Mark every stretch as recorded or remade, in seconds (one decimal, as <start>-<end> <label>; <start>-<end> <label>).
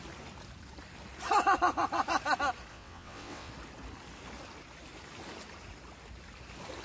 0.0-2.7 recorded; 2.7-3.5 remade; 3.5-6.8 recorded